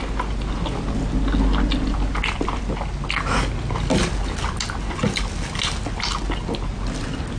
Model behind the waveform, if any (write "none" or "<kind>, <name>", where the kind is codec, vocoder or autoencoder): none